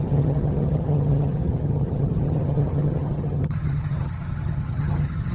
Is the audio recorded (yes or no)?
no